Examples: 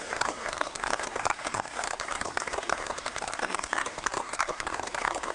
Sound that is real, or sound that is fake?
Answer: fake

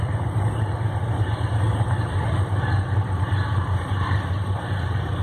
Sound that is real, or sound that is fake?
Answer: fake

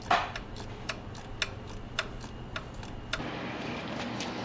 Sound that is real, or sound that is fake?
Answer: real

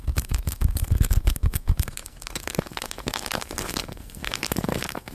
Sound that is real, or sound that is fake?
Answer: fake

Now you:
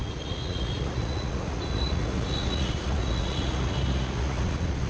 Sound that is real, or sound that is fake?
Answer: fake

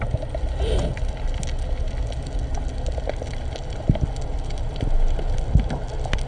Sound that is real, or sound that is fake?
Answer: real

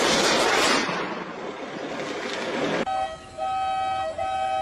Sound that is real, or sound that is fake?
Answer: real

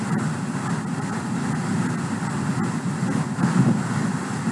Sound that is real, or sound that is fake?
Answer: real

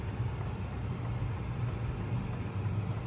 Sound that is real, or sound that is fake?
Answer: real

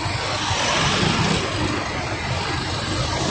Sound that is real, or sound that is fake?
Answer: real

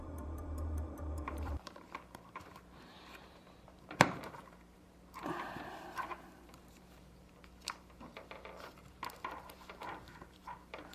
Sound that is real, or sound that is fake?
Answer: fake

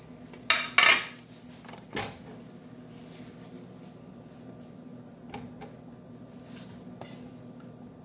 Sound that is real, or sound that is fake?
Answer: real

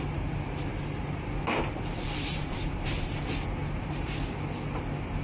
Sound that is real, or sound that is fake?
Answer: real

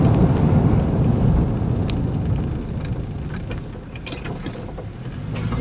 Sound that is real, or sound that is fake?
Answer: real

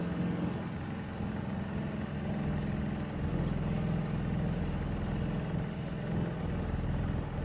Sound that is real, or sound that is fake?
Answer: real